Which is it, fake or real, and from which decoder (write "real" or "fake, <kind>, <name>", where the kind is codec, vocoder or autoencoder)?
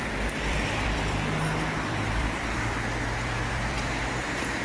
fake, vocoder, BigVGAN v2